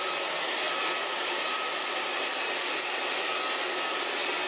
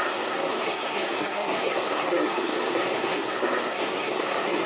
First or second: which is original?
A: first